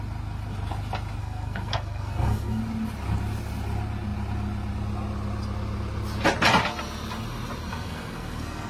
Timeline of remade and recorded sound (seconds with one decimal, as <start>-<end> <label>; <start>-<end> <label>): 0.0-1.2 recorded; 1.2-2.6 remade; 2.6-7.7 recorded; 7.7-8.7 remade